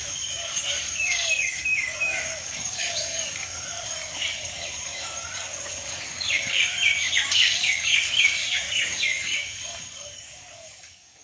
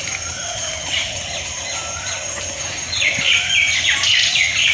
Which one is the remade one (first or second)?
first